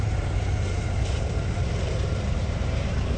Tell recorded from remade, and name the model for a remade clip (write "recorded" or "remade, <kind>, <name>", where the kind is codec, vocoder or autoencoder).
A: remade, vocoder, BigVGAN v2